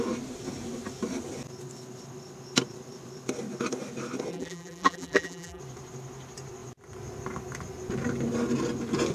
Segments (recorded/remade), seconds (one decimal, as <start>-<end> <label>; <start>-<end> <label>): 0.0-4.3 recorded; 4.3-5.6 remade; 5.6-9.1 recorded